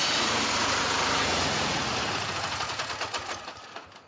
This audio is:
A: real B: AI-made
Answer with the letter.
B